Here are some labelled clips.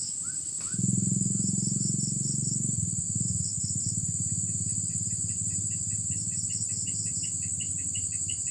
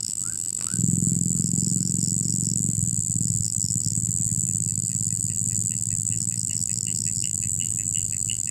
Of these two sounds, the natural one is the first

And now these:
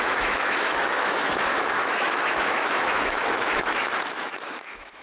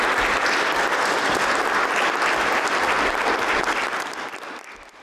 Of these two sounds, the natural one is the second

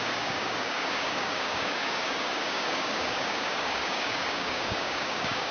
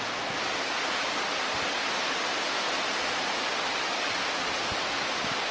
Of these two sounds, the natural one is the second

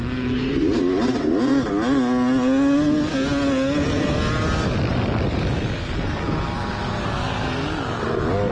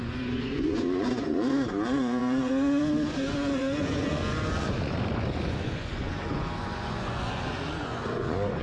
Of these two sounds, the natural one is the first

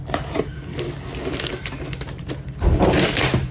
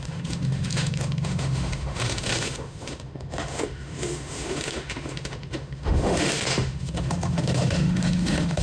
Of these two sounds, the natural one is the first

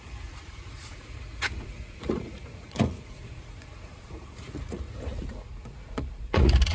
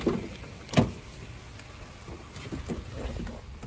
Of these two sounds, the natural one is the second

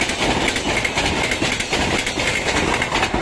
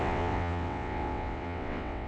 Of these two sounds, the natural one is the first